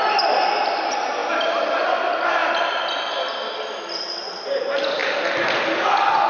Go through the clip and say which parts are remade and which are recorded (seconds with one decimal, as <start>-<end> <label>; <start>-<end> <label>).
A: 0.0-6.3 recorded